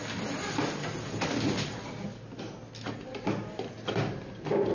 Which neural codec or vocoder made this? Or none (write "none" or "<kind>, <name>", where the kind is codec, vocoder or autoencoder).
none